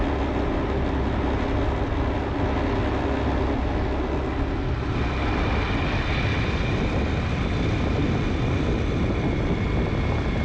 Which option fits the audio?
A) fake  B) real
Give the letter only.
B